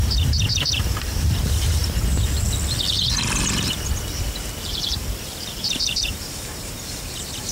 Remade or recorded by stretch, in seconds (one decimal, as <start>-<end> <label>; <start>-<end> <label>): 0.0-1.8 remade; 1.8-4.4 recorded; 4.4-7.5 remade